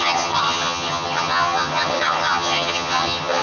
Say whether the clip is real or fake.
fake